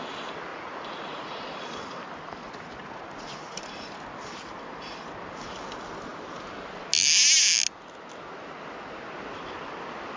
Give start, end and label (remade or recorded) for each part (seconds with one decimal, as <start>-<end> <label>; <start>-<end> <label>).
0.0-0.5 recorded; 0.5-1.4 remade; 1.4-2.4 recorded; 2.4-3.6 remade; 3.6-10.2 recorded